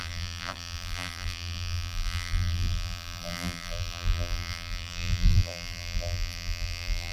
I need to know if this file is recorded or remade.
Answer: remade